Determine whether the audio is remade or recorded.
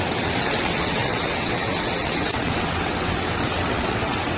remade